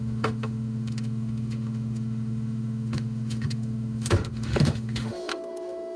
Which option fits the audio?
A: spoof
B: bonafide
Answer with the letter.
A